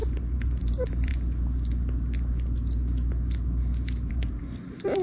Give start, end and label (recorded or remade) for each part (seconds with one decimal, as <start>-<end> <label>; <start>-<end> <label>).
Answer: 0.0-1.1 remade; 1.1-4.1 recorded; 4.1-5.0 remade